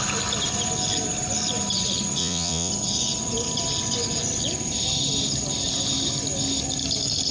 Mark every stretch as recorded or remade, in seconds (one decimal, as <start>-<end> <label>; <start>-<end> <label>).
0.0-2.2 recorded; 2.2-2.7 remade; 2.7-7.3 recorded